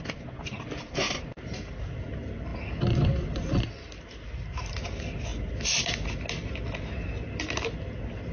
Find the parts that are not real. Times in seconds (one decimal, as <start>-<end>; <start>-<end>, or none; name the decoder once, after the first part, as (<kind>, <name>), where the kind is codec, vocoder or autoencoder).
none